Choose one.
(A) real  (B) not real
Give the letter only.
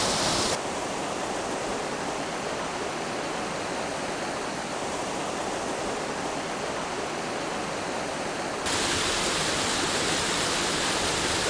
A